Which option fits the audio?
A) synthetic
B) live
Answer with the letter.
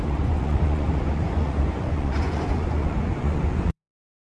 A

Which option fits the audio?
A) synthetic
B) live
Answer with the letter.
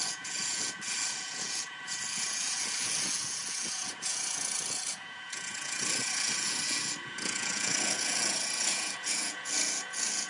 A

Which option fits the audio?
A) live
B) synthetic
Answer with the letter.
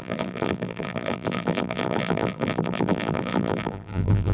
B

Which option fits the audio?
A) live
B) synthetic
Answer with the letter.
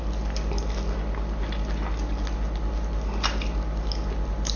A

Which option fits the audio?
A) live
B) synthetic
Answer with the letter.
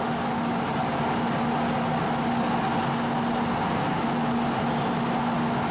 A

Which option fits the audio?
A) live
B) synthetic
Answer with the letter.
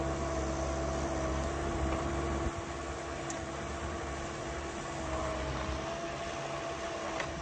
A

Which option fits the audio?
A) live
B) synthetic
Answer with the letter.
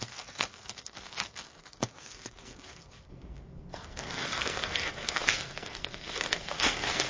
B